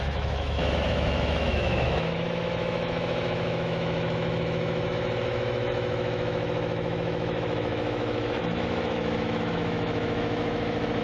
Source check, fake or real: fake